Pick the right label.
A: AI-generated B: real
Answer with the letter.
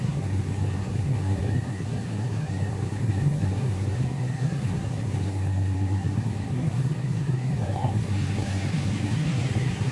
A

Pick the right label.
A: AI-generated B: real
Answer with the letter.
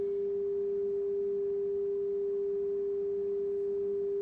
B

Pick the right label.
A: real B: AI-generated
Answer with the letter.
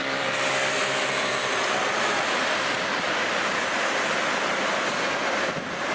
B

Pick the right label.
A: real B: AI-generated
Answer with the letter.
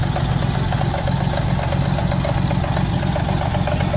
A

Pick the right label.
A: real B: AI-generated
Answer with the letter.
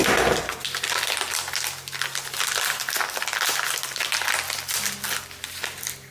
A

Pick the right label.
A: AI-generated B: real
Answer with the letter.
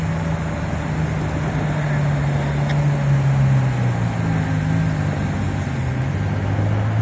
B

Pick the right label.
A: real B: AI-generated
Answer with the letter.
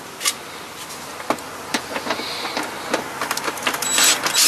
A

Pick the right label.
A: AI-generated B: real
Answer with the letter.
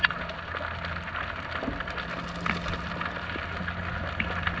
B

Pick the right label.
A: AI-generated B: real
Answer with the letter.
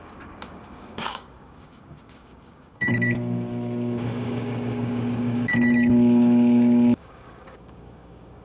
A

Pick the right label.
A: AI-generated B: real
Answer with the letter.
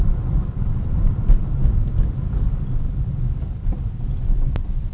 A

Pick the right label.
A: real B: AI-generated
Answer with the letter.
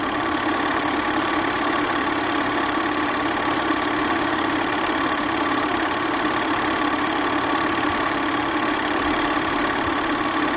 A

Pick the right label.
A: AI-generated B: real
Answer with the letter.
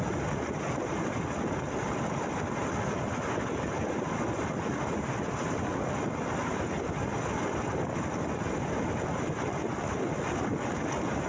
B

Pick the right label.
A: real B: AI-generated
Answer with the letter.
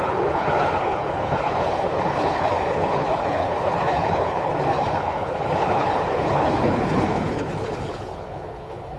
B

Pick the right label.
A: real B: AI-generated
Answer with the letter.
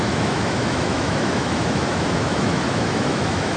B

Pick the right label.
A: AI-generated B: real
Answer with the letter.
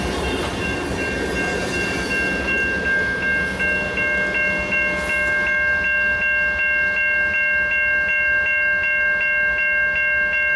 B